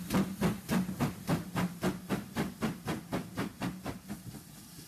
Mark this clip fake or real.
real